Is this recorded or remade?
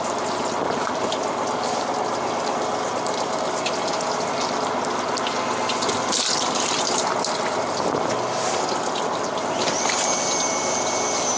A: recorded